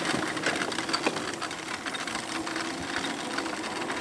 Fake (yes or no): no